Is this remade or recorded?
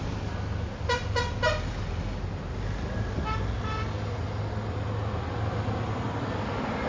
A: recorded